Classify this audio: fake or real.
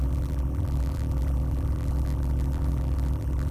fake